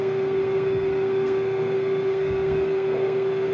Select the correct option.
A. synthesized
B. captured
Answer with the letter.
A